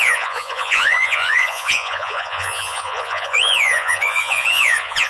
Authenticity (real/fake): fake